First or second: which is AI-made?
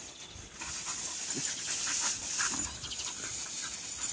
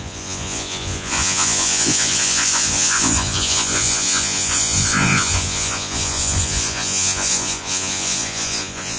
second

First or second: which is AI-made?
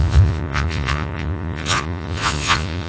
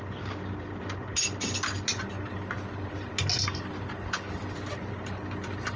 first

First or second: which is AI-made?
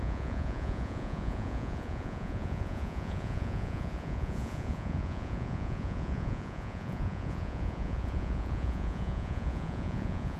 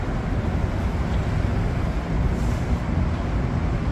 first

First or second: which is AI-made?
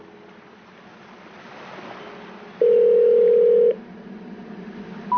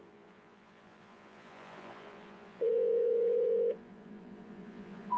second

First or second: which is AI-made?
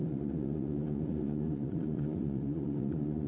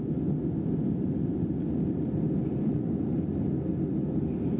first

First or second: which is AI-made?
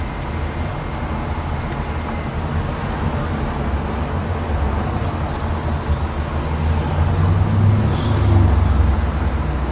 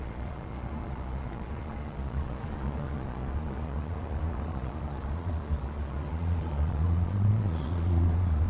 second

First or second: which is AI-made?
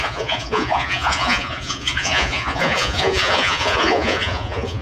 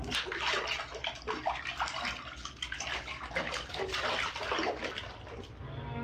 first